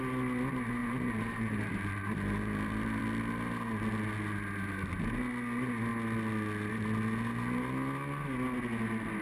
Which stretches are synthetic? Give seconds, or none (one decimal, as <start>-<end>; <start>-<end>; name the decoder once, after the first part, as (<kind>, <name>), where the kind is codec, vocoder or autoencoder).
0.8-3.0 (vocoder, BigVGAN v2)